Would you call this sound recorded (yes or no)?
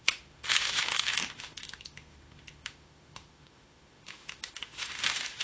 no